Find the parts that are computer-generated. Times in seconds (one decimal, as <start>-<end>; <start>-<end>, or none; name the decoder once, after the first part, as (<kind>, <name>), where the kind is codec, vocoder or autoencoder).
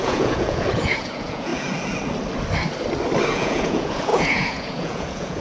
0.0-1.5 (vocoder, Vocos); 3.3-5.4